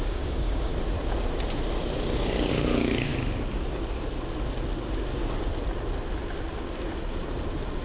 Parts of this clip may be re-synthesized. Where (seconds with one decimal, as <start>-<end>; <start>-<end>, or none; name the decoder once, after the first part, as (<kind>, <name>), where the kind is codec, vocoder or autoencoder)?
0.0-0.7 (codec, DAC); 2.5-3.1